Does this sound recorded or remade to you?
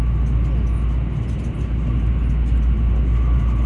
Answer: recorded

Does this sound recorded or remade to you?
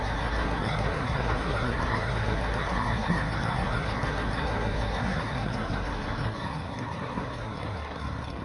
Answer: remade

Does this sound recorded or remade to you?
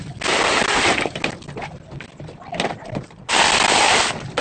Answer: recorded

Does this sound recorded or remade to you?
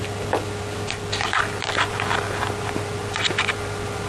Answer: recorded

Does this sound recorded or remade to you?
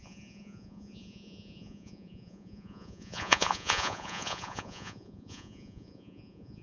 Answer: remade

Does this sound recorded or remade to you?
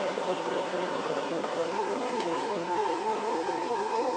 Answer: remade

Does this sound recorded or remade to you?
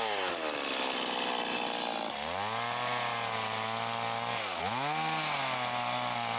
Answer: recorded